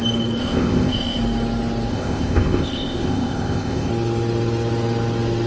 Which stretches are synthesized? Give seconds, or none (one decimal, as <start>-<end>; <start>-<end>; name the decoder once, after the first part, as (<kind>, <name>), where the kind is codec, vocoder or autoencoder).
0.4-1.2 (codec, ZipCodec); 1.9-3.9

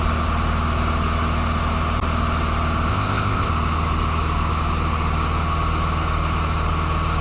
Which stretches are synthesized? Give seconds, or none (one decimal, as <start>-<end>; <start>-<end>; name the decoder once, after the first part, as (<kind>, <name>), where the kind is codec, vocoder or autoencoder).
2.9-3.5 (codec, ZipCodec)